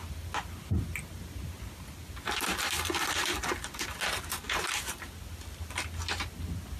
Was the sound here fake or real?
real